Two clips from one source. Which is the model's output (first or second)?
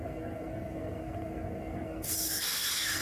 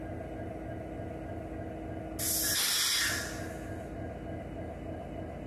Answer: first